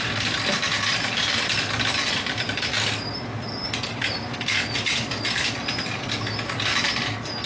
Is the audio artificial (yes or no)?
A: no